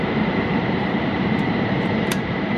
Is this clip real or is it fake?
fake